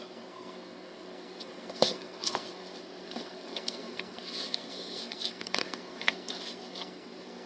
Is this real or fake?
fake